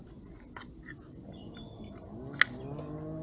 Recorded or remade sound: recorded